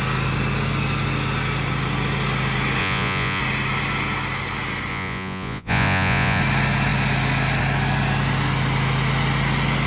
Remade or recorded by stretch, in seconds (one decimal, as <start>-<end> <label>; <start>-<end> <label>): 0.0-2.8 recorded; 2.8-3.4 remade; 3.4-4.9 recorded; 4.9-6.4 remade; 6.4-9.9 recorded